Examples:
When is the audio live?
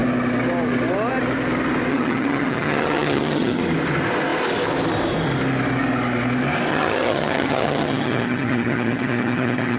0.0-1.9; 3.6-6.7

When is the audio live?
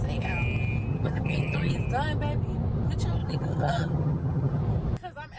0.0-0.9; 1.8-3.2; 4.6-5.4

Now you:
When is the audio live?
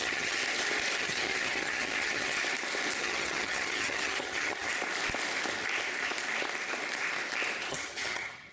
0.4-1.0; 2.4-3.0; 4.7-7.7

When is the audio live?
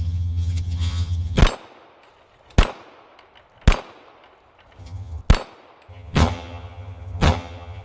1.4-4.8; 5.2-5.9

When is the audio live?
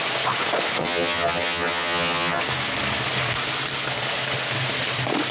0.0-0.8; 2.4-5.3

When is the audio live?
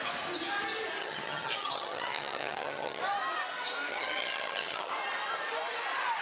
0.0-1.0; 3.0-3.9; 4.9-6.2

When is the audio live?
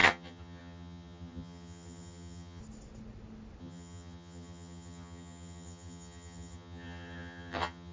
2.6-3.6